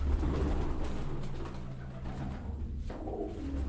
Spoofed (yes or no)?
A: no